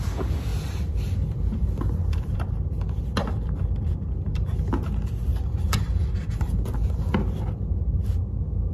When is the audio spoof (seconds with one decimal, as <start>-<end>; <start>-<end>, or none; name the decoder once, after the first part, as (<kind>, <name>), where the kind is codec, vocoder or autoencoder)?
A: 0.5-4.7 (vocoder, BigVGAN v2); 5.3-7.1